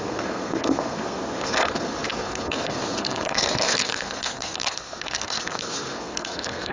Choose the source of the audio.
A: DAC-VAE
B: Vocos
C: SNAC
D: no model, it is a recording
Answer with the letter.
C